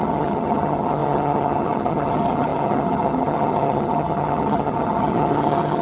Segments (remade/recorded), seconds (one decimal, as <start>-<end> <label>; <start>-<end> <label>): 0.0-5.8 remade